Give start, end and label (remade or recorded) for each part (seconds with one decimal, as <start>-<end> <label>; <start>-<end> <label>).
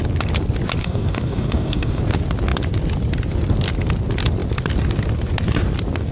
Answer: 0.0-0.8 recorded; 0.8-2.0 remade; 2.0-6.1 recorded